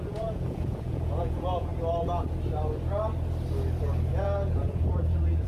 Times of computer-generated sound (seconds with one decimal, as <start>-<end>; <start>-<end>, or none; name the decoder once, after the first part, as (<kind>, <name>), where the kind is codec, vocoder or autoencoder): 0.0-1.7 (vocoder, Vocos); 4.1-5.5